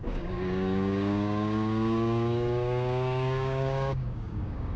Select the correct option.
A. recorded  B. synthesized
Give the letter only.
B